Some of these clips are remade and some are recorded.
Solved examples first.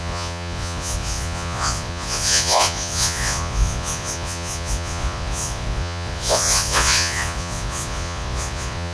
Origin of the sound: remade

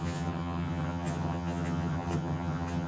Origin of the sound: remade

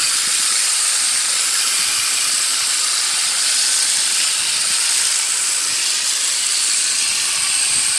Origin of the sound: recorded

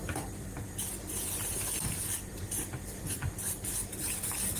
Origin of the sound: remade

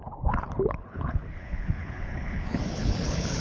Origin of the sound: remade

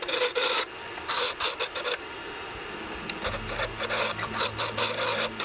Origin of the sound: recorded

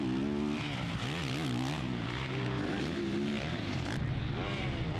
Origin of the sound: recorded